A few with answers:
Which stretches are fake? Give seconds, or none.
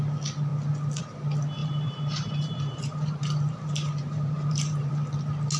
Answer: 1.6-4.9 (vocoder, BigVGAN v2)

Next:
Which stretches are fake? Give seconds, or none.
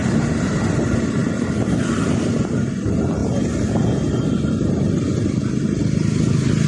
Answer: none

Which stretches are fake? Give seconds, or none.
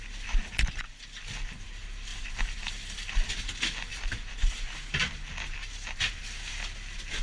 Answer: 2.1-3.3 (vocoder, BigVGAN v2); 3.9-4.6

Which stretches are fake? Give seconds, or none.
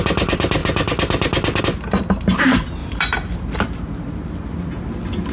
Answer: 2.8-4.3 (vocoder, BigVGAN v2)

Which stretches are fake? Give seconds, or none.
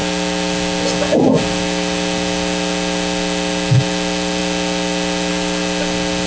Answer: none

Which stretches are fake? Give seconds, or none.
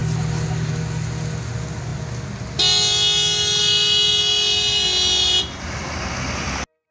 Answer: none